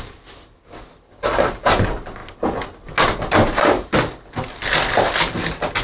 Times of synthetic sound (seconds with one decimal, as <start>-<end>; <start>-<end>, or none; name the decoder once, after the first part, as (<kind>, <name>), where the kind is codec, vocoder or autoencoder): none